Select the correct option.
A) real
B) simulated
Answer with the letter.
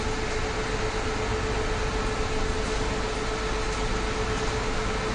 A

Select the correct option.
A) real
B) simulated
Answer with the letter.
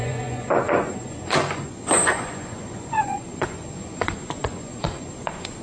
B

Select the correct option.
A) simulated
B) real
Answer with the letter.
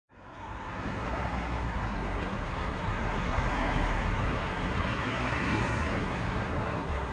A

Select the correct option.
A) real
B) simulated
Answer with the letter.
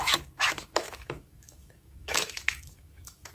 B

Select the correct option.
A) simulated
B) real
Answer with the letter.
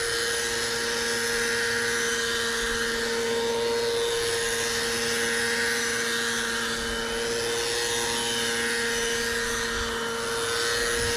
B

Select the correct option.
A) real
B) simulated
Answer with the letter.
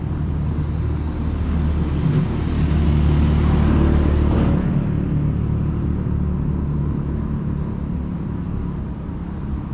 A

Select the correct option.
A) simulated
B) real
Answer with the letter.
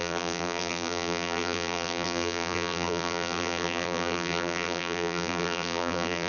A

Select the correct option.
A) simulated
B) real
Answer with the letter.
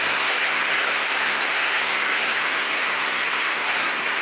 A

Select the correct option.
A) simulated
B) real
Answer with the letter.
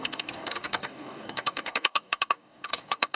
A